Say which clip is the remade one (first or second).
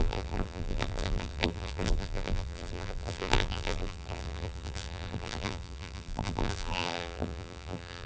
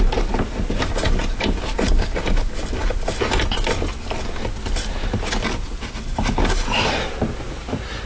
first